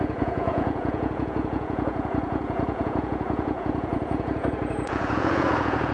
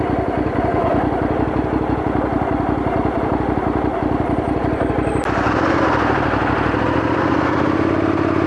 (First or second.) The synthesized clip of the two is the first